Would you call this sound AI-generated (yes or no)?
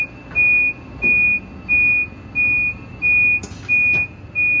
no